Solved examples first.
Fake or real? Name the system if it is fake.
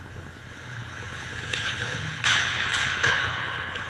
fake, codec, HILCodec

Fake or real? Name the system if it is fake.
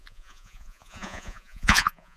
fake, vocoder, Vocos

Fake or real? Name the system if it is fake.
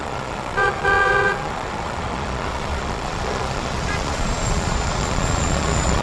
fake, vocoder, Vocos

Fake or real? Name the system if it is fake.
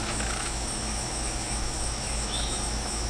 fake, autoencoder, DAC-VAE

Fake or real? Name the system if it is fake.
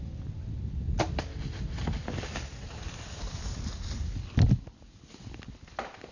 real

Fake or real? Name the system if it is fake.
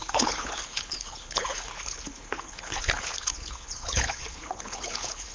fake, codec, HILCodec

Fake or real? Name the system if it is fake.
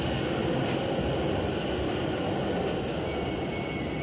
real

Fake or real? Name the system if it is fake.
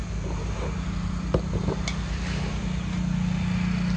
real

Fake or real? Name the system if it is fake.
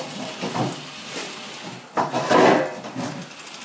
real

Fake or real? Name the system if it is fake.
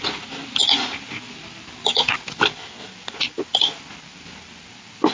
real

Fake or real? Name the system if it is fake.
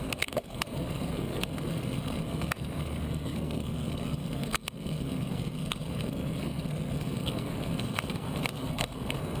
fake, codec, SNAC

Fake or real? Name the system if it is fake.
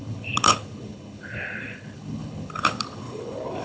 fake, codec, HILCodec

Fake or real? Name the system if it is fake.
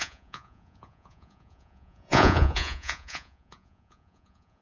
fake, vocoder, Vocos